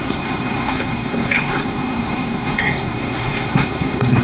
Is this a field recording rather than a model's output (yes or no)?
no